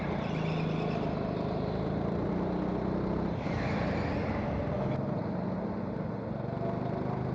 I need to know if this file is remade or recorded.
recorded